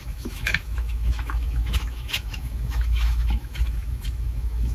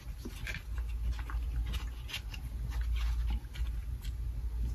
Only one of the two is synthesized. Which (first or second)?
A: first